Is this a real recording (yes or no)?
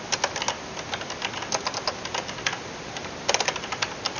yes